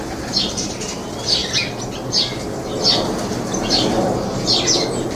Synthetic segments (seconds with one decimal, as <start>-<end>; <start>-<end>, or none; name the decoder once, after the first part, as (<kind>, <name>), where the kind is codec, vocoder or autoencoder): none